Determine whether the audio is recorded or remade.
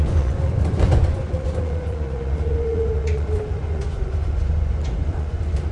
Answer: remade